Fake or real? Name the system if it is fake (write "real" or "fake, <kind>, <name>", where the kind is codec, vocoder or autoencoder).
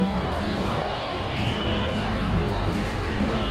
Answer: fake, codec, DAC